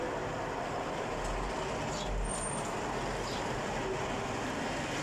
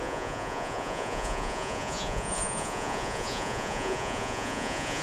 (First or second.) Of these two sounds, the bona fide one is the first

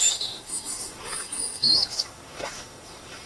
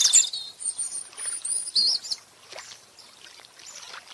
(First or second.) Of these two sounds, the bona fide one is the second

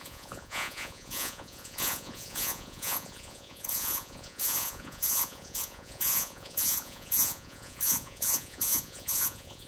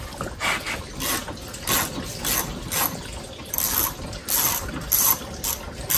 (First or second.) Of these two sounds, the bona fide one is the second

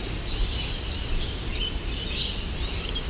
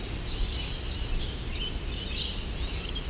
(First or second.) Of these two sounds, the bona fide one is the second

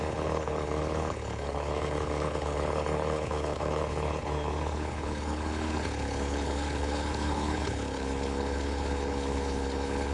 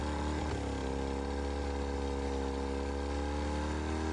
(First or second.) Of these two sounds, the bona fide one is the second